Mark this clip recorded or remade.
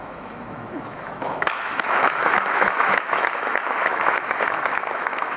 remade